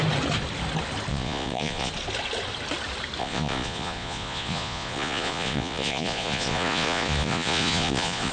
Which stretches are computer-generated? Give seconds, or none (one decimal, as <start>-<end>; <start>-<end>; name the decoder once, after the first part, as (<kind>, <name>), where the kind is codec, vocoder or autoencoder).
1.1-1.9 (vocoder, Vocos); 3.2-8.3